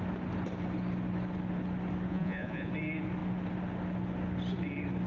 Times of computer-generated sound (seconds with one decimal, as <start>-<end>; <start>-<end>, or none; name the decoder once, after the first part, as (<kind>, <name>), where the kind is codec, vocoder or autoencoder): 2.1-2.7 (vocoder, Vocos)